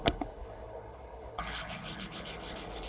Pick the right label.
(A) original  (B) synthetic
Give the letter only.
B